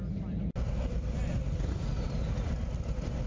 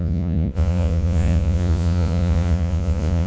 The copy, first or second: second